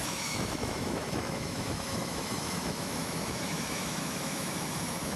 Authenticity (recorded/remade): remade